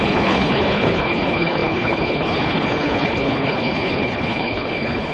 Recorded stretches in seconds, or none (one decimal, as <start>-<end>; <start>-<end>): none